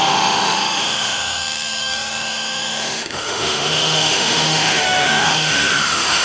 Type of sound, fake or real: fake